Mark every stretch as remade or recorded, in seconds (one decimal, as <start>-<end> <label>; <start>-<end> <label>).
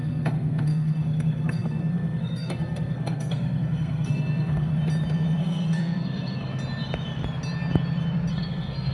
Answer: 0.0-4.7 remade; 4.7-5.4 recorded; 5.4-6.5 remade; 6.5-8.3 recorded; 8.3-8.9 remade